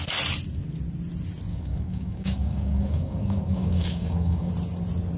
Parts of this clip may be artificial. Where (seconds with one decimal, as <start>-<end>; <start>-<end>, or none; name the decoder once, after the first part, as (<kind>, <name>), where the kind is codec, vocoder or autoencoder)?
1.5-4.5 (codec, DAC)